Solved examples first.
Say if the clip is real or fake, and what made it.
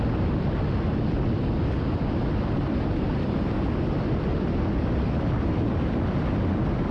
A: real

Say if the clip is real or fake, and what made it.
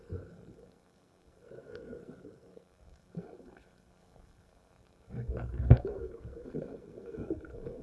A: fake, codec, SNAC